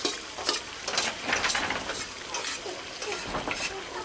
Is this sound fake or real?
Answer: real